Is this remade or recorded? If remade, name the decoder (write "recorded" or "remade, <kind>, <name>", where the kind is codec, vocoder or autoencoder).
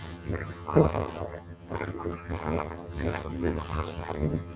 remade, vocoder, HiFi-GAN